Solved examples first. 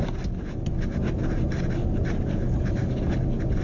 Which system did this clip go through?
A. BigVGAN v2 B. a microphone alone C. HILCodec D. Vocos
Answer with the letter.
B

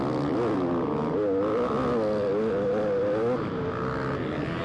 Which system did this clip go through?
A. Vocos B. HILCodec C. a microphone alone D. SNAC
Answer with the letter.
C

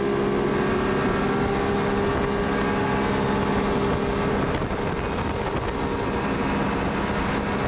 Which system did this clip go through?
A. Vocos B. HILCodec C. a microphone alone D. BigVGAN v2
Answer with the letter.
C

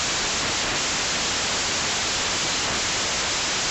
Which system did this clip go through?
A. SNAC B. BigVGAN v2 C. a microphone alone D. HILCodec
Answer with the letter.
C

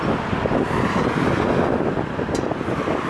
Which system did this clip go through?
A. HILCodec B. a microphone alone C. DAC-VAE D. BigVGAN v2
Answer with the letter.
B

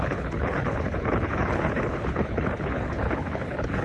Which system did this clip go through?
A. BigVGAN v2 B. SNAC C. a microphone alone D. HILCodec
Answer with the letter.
D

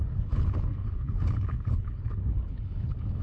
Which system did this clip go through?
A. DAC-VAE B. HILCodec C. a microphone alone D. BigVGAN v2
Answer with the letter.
B